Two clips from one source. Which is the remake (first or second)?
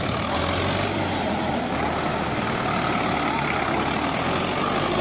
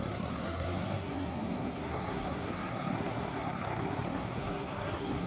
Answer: second